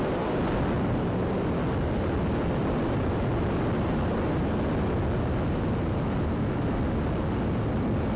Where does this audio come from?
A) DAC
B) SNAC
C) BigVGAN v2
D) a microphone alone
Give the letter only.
D